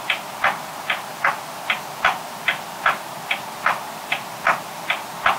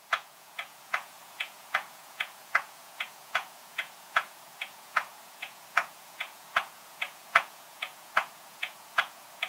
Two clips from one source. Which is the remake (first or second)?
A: second